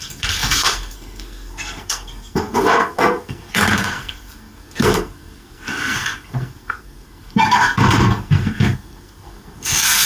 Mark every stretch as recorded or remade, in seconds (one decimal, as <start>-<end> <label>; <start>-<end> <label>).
0.0-10.1 remade